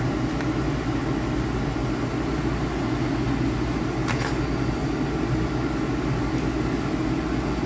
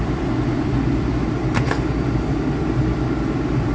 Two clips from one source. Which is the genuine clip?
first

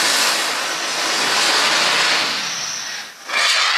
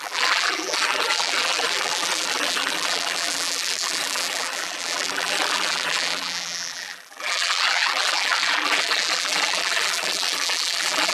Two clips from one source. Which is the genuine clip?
first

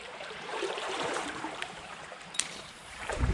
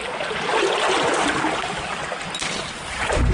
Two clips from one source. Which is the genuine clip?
second